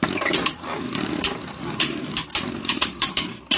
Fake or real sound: fake